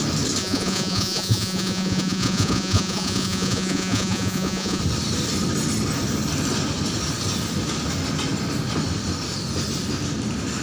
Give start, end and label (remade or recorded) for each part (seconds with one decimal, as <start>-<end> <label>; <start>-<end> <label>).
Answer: 0.0-0.4 recorded; 0.4-4.8 remade; 4.8-10.6 recorded